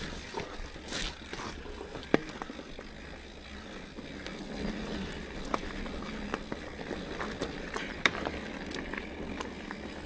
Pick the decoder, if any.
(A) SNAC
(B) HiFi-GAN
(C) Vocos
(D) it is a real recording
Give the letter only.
D